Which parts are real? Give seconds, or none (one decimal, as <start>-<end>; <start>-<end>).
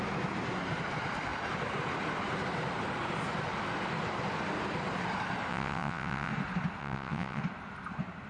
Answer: 0.0-5.5; 6.3-6.8; 7.4-8.3